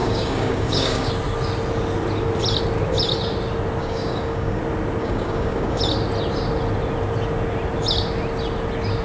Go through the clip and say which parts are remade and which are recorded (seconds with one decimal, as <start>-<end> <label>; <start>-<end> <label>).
0.0-1.1 remade; 1.1-3.8 recorded; 3.8-4.6 remade; 4.6-5.0 recorded; 5.0-5.8 remade; 5.8-9.0 recorded